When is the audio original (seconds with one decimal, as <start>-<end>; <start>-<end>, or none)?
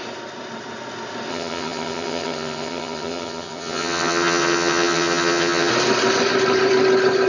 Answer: 0.0-1.3; 5.7-7.3